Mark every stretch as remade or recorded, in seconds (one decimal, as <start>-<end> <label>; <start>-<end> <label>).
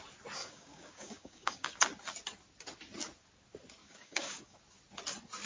0.0-0.4 recorded; 0.4-1.8 remade; 1.8-3.8 recorded; 3.8-4.6 remade; 4.6-5.5 recorded